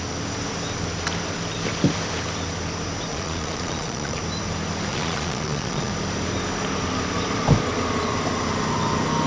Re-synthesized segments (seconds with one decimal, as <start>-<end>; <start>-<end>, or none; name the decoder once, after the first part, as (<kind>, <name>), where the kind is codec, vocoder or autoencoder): 3.1-4.2 (vocoder, Vocos); 4.9-5.9